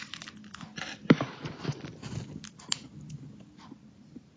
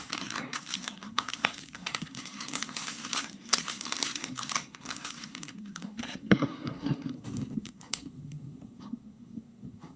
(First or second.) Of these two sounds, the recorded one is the first